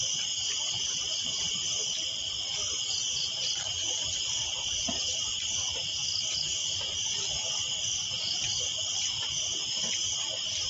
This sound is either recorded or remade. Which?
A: recorded